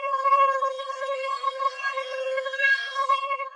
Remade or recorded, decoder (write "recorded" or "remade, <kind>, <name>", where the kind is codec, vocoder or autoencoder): remade, codec, SNAC